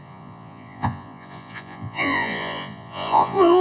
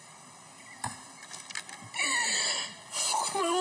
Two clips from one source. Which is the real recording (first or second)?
second